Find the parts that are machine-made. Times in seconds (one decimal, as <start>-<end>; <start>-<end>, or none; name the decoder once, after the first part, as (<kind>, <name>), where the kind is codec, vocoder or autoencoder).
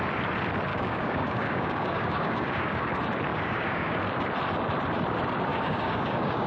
0.7-2.9 (codec, DAC); 3.3-4.0; 5.5-6.5